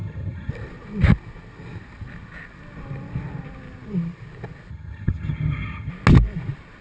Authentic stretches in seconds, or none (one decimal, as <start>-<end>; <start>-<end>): 0.5-4.7; 5.9-6.8